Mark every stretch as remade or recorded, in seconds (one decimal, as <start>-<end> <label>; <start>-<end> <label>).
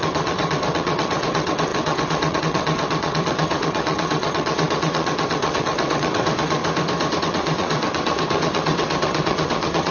0.0-6.6 remade; 6.6-7.2 recorded; 7.2-9.9 remade